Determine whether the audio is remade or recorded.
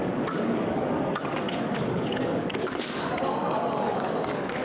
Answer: remade